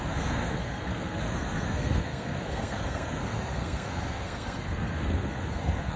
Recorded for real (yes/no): no